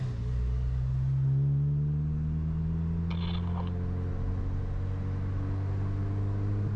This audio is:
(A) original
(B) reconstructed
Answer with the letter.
A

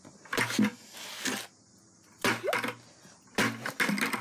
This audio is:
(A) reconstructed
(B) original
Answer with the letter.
B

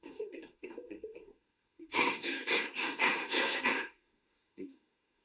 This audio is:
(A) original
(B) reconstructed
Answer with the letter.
B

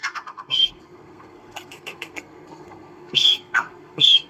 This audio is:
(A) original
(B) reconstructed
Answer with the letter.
B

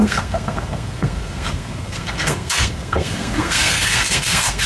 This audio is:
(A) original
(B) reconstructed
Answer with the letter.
B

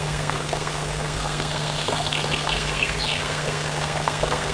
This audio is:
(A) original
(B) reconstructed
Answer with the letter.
B